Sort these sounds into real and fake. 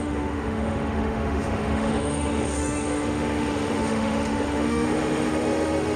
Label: fake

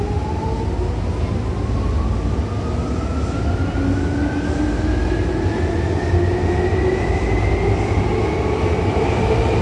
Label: real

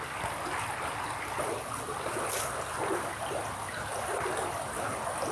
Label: real